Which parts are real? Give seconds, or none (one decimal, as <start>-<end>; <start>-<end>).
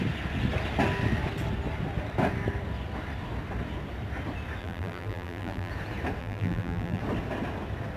0.0-4.6; 5.7-6.2; 7.0-8.0